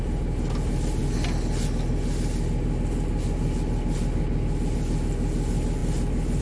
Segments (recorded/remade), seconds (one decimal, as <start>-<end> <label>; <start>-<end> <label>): 0.0-6.4 recorded

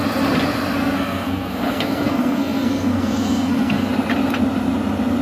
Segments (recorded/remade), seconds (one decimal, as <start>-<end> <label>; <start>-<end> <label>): 0.0-0.8 recorded; 0.8-3.9 remade; 3.9-5.2 recorded

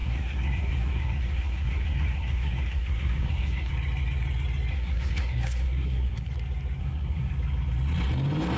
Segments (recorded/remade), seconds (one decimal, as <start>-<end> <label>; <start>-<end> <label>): 0.0-3.7 remade; 3.7-4.7 recorded; 4.7-6.3 remade; 6.3-6.8 recorded; 6.8-7.3 remade; 7.3-8.6 recorded

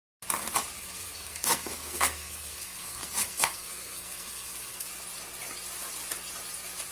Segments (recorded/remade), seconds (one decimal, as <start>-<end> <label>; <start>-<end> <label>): 0.0-0.8 recorded; 0.8-4.9 remade; 4.9-6.9 recorded

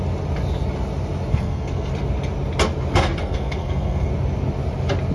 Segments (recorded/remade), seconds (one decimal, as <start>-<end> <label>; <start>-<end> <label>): 0.0-1.3 recorded; 1.3-1.9 remade; 1.9-3.2 recorded; 3.2-4.1 remade; 4.1-5.1 recorded

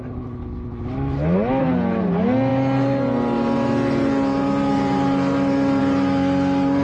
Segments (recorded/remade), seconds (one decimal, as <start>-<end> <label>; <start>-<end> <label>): 0.0-6.8 recorded

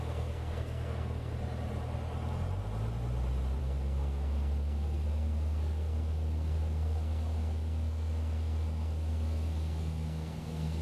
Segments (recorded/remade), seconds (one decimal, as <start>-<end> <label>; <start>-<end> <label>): 0.0-1.3 remade; 1.3-3.6 recorded; 3.6-10.8 remade

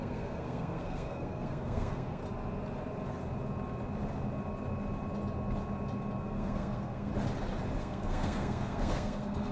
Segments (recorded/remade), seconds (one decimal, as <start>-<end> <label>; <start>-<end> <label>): 0.0-2.2 remade; 2.2-6.2 recorded; 6.2-7.1 remade; 7.1-7.8 recorded; 7.8-9.5 remade